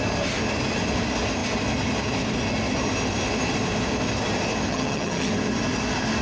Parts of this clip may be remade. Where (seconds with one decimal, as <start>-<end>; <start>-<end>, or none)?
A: 4.7-5.3